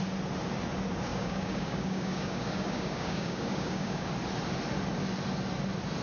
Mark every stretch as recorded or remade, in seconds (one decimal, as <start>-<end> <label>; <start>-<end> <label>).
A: 0.0-1.1 recorded; 1.1-4.1 remade; 4.1-6.0 recorded